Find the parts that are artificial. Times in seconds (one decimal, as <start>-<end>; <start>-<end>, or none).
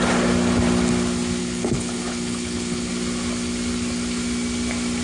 1.4-2.9